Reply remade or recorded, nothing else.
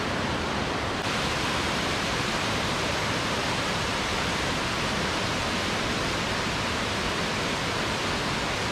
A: recorded